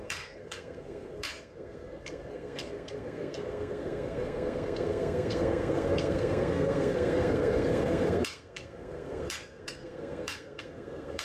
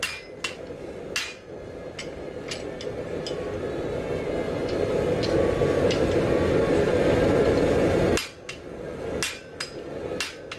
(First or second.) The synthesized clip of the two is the first